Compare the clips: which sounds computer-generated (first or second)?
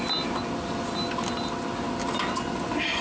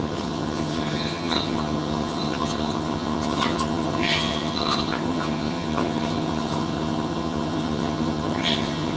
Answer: second